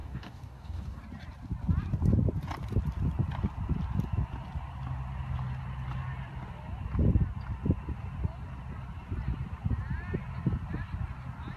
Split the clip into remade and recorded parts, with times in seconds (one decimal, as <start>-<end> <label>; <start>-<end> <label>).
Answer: 0.0-1.0 remade; 1.0-11.6 recorded